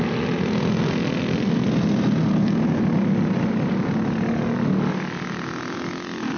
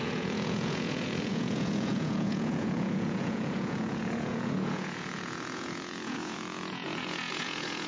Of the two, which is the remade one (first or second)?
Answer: second